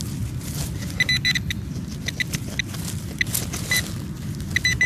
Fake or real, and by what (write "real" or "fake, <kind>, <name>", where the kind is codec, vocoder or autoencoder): real